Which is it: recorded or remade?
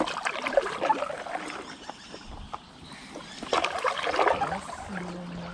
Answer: recorded